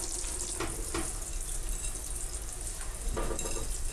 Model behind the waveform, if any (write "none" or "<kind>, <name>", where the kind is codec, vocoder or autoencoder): none